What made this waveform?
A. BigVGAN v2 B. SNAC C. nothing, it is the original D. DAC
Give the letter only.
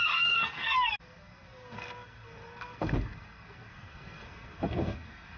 B